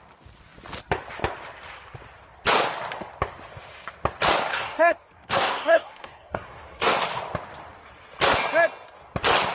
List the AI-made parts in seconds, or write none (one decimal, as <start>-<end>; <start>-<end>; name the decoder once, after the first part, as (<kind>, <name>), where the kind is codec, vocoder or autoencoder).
4.5-6.9 (codec, SNAC)